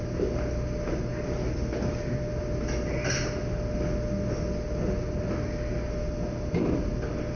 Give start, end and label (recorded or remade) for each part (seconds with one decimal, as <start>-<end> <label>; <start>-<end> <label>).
0.0-7.4 recorded

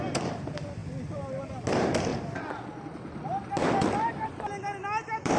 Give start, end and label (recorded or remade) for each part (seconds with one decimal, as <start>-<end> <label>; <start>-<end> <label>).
0.0-5.4 recorded